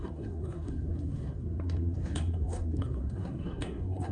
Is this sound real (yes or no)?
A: no